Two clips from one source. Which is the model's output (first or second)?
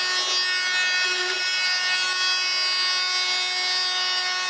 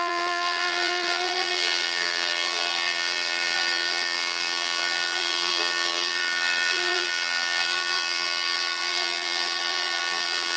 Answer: second